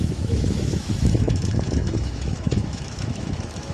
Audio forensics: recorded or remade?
remade